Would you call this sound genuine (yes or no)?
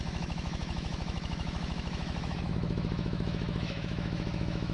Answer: no